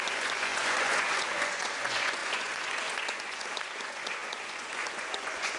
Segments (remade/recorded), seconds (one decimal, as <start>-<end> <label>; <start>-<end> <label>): 0.0-5.6 remade